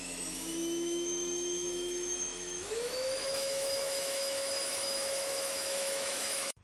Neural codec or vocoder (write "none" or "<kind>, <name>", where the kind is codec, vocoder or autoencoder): autoencoder, DAC-VAE